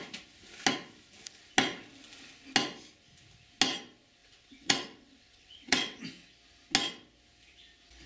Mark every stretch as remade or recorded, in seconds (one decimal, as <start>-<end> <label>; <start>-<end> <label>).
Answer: 0.0-4.2 recorded; 4.2-6.0 remade; 6.0-8.1 recorded